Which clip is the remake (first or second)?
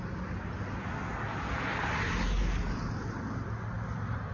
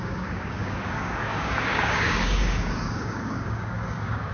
second